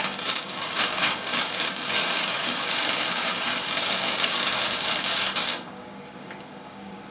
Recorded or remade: remade